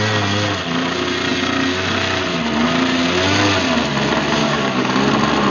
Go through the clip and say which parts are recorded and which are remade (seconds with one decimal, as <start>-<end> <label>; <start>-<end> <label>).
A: 0.0-4.4 recorded; 4.4-5.0 remade; 5.0-5.5 recorded